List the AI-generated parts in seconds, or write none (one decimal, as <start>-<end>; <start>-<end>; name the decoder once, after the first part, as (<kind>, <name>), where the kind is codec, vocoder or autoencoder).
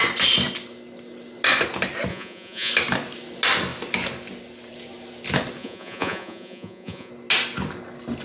2.1-2.7 (vocoder, Vocos); 5.6-7.1